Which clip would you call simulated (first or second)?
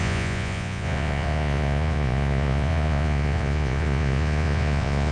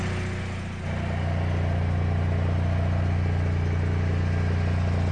first